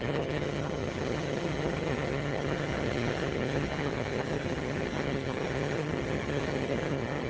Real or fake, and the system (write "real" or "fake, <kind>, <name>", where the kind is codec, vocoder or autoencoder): fake, vocoder, HiFi-GAN